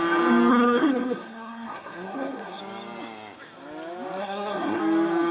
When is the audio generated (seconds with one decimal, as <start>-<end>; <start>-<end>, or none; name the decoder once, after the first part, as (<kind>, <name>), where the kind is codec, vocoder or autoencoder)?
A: 0.5-2.6 (codec, SNAC); 4.2-4.8